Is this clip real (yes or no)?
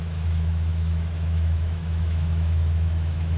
no